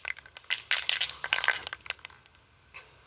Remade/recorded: recorded